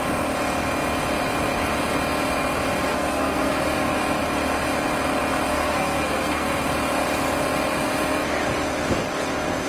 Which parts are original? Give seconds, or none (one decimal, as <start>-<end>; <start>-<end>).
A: 0.0-2.9; 3.5-5.5; 6.7-9.7